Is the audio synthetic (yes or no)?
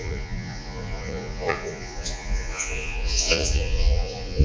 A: yes